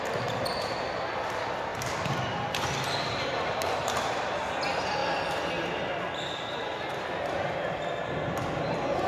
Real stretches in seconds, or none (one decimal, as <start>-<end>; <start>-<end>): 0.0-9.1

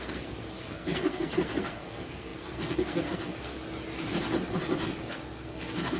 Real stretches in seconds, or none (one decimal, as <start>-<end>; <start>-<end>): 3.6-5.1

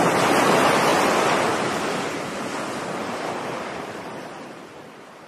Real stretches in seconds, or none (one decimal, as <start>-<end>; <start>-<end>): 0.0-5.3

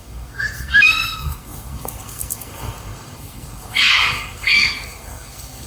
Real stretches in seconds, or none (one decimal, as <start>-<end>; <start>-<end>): none